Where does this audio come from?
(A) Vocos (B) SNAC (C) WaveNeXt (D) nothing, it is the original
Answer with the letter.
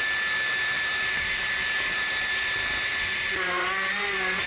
D